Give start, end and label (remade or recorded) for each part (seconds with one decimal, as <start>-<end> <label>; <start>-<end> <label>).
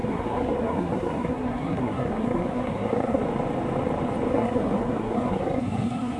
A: 0.0-3.2 remade; 3.2-4.3 recorded; 4.3-6.2 remade